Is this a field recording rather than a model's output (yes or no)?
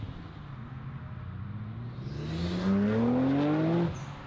yes